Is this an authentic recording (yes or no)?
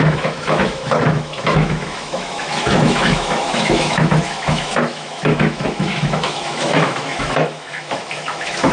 no